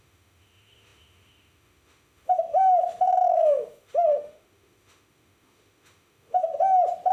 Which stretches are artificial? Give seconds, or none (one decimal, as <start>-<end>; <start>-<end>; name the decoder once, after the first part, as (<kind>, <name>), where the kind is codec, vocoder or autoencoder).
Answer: 0.0-6.5 (autoencoder, DAC-VAE)